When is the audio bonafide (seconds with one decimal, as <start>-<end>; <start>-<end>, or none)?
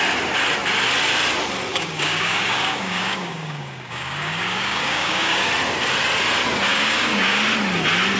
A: 0.0-1.7; 5.5-6.7; 7.4-8.2